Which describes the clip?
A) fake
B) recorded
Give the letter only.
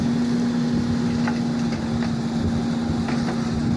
B